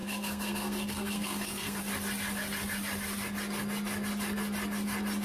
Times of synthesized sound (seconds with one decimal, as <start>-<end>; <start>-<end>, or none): 0.0-1.8